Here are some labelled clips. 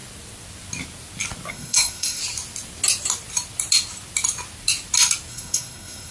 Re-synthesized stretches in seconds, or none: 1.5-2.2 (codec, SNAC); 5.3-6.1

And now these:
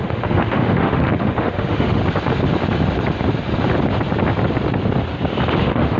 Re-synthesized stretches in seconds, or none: 0.0-2.0 (autoencoder, DAC-VAE); 5.6-6.0